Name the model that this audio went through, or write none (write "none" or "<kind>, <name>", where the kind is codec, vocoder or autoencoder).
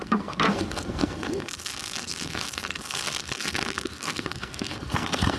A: codec, SNAC